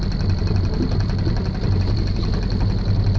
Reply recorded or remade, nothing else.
recorded